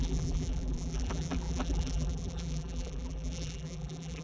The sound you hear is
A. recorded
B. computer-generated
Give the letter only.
B